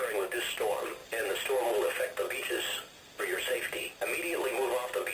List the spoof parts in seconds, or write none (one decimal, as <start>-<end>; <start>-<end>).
none